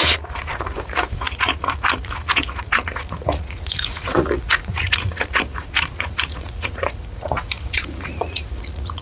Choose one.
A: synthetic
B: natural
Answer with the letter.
A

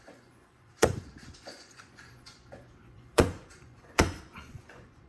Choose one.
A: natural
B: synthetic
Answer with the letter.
B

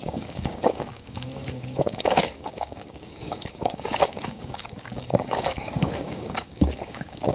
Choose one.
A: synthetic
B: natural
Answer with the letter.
A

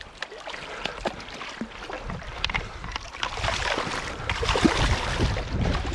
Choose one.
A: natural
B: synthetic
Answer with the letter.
A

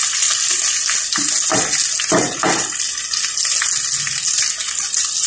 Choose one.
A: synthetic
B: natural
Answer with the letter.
B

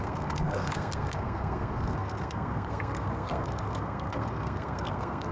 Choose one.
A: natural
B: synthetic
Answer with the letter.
B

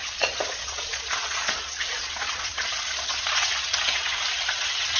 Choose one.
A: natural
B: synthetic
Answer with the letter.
B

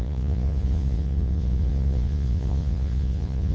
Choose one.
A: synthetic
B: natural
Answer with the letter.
A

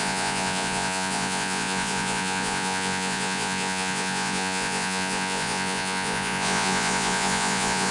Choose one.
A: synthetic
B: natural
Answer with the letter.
A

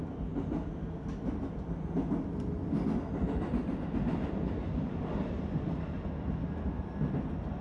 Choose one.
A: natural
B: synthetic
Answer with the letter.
A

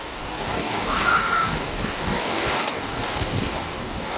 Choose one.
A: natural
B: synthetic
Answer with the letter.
B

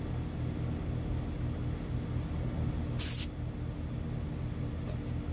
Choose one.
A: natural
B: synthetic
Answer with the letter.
A